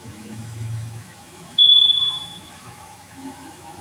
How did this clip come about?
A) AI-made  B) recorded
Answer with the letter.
A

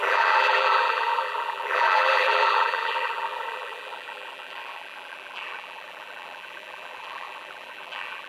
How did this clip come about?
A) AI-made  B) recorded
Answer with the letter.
A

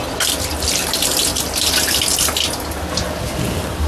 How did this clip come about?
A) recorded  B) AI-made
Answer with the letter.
A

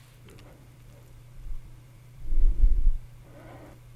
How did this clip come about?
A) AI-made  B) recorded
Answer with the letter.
A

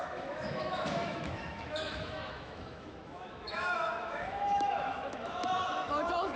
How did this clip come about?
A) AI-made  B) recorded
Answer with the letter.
A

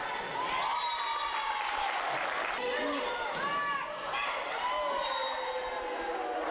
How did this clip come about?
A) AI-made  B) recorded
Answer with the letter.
B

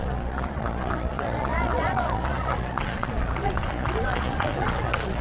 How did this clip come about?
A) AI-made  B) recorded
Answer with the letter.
A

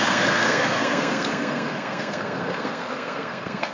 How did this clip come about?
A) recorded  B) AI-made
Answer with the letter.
B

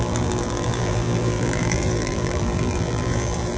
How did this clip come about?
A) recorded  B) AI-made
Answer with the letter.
B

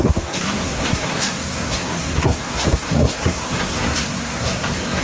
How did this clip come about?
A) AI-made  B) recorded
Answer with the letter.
A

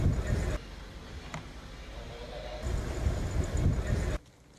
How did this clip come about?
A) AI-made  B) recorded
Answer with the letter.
B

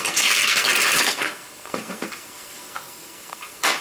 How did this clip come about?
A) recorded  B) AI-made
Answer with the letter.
B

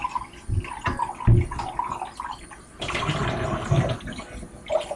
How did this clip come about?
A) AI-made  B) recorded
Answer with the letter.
B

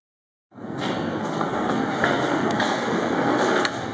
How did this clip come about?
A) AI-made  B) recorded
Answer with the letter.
A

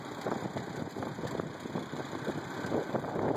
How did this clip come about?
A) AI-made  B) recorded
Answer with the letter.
B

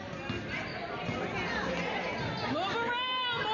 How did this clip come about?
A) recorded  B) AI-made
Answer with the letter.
A